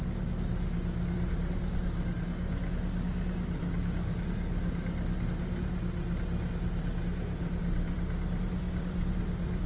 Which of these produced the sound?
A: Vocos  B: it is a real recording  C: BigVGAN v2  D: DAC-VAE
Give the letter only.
B